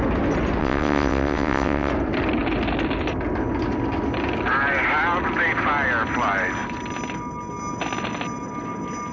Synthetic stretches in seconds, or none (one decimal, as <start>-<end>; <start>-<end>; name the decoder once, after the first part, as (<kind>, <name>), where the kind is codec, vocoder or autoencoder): 0.6-1.9 (vocoder, WaveNeXt)

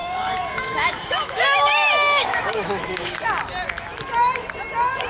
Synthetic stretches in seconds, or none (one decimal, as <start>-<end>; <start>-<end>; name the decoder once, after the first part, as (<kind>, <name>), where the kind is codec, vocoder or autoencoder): 0.0-3.1 (autoencoder, DAC-VAE)

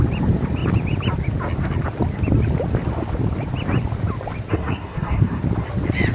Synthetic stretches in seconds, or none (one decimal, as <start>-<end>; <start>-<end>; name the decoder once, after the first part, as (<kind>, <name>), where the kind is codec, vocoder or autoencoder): 4.5-5.4 (codec, SNAC)